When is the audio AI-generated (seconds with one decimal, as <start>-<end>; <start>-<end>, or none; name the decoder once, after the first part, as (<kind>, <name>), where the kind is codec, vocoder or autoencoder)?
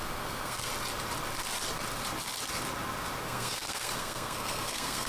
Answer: 0.0-0.7 (codec, SNAC); 3.2-5.1